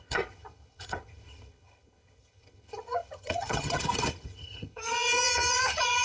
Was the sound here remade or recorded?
remade